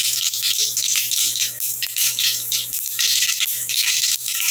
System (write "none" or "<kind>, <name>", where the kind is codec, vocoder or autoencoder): autoencoder, DAC-VAE